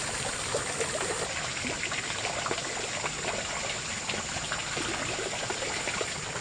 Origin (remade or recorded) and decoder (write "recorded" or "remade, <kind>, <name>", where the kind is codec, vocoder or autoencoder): recorded